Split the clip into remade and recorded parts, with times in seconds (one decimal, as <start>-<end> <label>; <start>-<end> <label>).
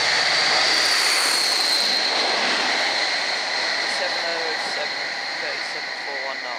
0.0-6.6 recorded